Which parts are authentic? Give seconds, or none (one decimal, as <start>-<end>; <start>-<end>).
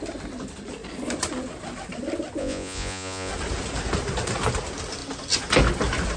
0.0-2.4; 3.3-6.2